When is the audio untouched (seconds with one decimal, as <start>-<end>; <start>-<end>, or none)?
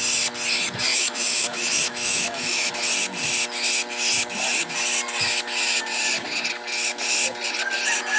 0.0-0.9; 2.7-8.2